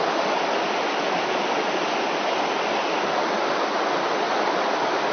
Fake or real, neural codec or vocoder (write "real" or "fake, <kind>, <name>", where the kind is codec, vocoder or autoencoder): real